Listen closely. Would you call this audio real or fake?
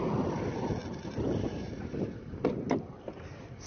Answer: real